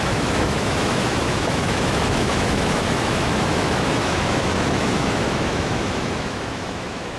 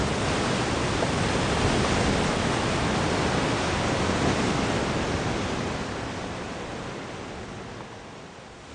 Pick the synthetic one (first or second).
first